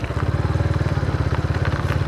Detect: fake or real real